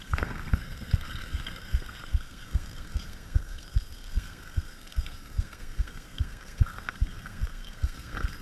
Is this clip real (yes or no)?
no